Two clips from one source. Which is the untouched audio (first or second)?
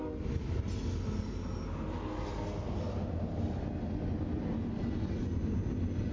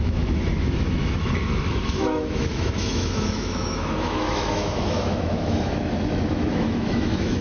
first